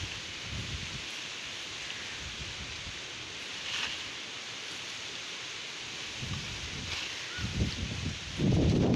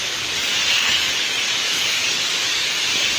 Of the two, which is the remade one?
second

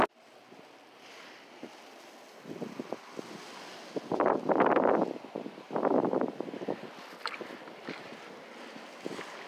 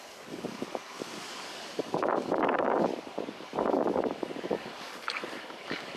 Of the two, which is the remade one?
second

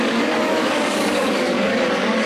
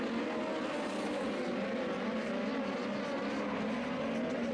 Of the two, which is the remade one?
first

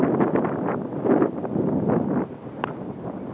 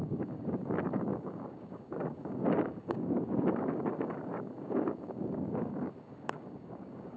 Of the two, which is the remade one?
second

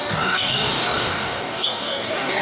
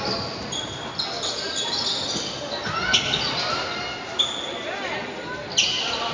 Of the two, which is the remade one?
first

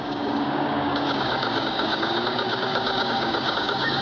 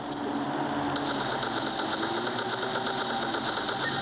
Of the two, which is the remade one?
first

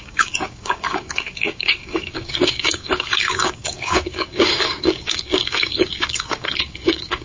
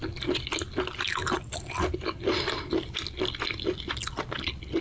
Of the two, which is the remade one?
first